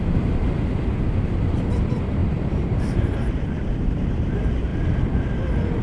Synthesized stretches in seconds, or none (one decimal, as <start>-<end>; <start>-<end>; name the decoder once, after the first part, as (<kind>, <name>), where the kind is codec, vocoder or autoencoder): 0.0-4.7 (vocoder, BigVGAN v2)